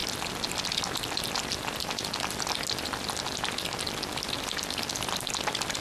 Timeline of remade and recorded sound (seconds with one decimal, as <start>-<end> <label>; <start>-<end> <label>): 0.0-5.8 recorded